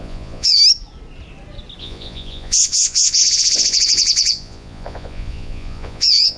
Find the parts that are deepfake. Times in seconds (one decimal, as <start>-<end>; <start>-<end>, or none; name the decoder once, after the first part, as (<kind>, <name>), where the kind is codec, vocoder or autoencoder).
0.0-0.6 (vocoder, Vocos); 1.8-6.4